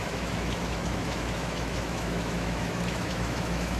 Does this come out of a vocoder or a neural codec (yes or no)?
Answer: yes